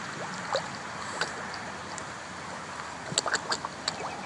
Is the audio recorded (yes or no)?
yes